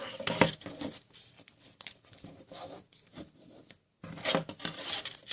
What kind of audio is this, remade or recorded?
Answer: recorded